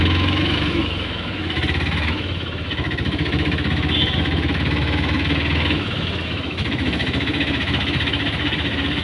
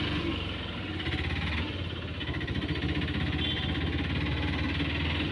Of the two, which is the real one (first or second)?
second